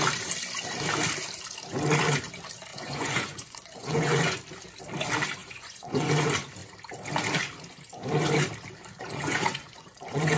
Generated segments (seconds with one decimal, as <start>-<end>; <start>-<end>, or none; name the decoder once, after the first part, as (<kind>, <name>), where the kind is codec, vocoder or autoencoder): 2.7-4.4 (vocoder, Vocos); 5.4-6.1; 8.8-10.4